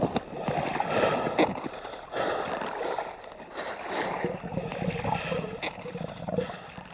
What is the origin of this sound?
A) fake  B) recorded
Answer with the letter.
B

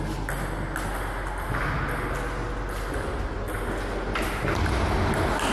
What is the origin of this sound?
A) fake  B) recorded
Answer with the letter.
B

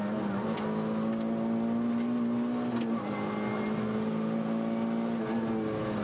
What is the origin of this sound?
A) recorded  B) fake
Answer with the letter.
A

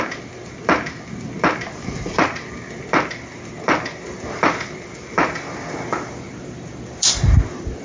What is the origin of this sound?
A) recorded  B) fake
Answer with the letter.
B